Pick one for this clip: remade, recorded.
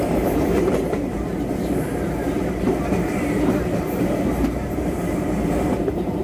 remade